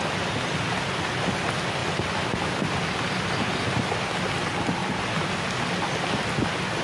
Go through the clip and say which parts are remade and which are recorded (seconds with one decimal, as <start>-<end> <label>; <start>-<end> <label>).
0.0-6.8 recorded